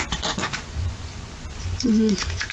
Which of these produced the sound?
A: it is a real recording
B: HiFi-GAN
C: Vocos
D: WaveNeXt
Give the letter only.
C